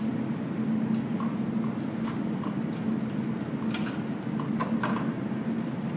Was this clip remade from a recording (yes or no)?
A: no